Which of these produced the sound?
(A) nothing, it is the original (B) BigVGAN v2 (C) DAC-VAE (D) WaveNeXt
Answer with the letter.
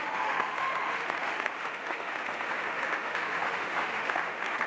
C